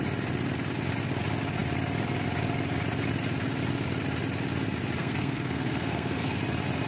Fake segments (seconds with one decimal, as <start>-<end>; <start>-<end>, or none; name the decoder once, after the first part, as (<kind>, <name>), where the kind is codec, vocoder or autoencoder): 5.0-6.4 (codec, SNAC)